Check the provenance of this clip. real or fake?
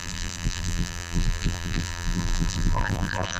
fake